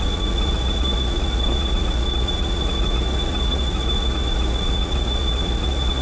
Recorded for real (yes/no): no